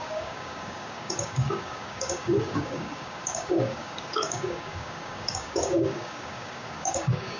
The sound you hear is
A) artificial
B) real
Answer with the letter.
A